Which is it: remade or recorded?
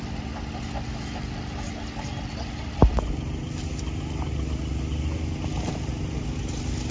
recorded